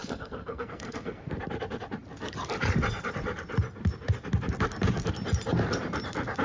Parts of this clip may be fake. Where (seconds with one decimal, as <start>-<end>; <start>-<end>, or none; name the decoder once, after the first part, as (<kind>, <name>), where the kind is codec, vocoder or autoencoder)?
0.0-1.3 (codec, SNAC)